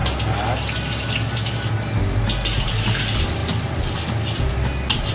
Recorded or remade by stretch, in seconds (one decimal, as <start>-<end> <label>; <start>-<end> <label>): 0.0-5.1 recorded